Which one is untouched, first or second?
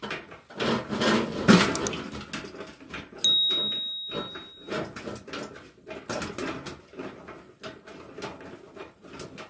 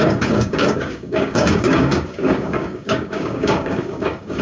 first